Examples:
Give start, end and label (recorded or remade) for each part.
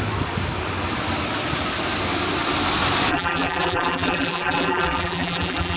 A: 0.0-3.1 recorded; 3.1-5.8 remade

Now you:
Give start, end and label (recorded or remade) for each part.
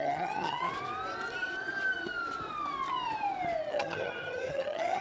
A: 0.0-0.7 remade; 0.7-3.7 recorded; 3.7-5.0 remade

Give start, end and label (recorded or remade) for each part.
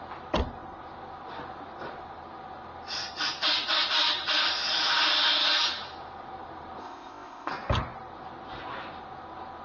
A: 0.0-6.8 recorded; 6.8-7.5 remade; 7.5-9.6 recorded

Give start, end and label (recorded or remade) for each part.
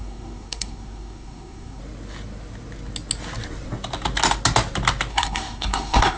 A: 0.0-1.8 remade; 1.8-5.1 recorded; 5.1-6.2 remade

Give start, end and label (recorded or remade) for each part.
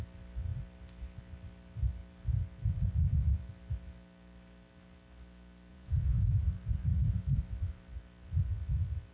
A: 0.0-5.7 recorded; 5.7-6.4 remade; 6.4-9.1 recorded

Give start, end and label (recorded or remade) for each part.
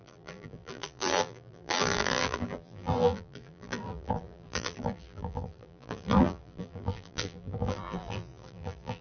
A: 0.0-9.0 remade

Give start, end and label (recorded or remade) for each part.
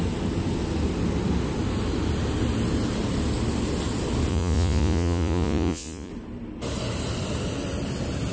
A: 0.0-4.3 recorded; 4.3-6.1 remade; 6.1-8.3 recorded